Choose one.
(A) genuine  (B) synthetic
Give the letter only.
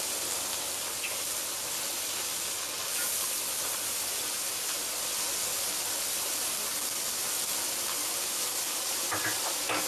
A